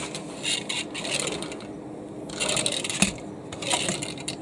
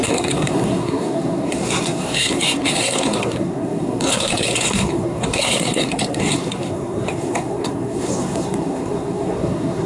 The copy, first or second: second